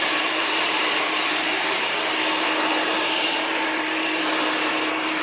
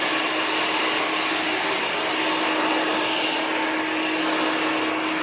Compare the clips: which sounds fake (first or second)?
first